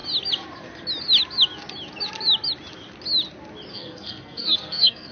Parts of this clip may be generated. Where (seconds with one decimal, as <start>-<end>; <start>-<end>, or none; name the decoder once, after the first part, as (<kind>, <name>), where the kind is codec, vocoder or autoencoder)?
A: 3.7-5.1 (codec, SNAC)

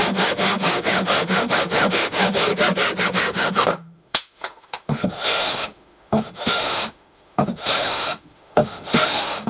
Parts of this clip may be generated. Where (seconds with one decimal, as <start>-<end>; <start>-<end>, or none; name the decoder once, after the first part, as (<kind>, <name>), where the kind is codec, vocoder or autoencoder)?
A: 0.0-2.5 (autoencoder, DAC-VAE); 3.0-9.5

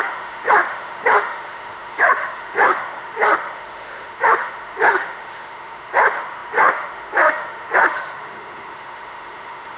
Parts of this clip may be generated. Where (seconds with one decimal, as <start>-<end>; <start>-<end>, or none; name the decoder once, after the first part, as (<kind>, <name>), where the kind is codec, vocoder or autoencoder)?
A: 0.0-9.8 (autoencoder, DAC-VAE)

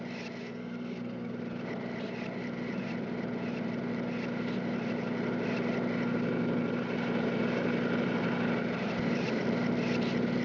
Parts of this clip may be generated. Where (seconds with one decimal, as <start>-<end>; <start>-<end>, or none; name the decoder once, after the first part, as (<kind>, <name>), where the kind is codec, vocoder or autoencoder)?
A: 0.4-1.4 (codec, SNAC)

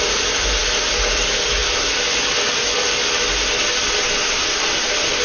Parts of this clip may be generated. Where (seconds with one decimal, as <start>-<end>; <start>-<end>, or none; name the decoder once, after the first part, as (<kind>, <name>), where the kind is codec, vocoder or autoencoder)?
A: none

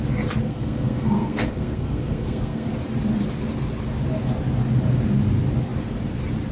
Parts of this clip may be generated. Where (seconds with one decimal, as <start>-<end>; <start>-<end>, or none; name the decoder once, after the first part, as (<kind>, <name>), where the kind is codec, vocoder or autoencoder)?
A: 0.4-2.7 (codec, SNAC)

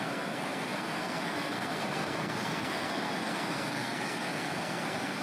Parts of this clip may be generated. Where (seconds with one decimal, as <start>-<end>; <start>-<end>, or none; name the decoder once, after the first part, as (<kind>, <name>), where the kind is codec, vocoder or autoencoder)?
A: 0.0-5.2 (codec, SNAC)